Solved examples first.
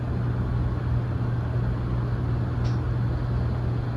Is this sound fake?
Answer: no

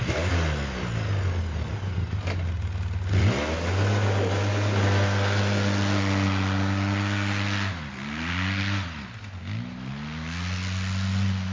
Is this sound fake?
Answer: no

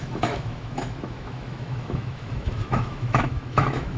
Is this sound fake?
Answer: yes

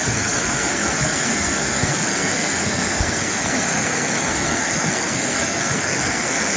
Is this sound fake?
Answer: yes